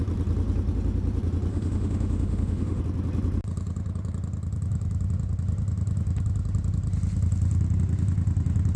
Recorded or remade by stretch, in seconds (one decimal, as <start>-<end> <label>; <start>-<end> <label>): 0.0-1.5 recorded; 1.5-2.8 remade; 2.8-8.8 recorded